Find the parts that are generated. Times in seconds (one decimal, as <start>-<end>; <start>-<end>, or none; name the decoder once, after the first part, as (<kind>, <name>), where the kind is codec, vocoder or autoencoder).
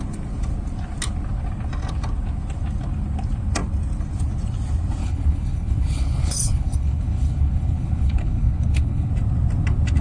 5.0-9.1 (codec, HILCodec)